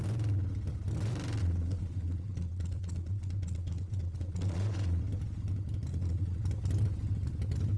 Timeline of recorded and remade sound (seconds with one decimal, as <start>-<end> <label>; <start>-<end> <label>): 0.0-1.4 recorded; 1.4-5.0 remade; 5.0-5.9 recorded; 5.9-6.4 remade; 6.4-7.8 recorded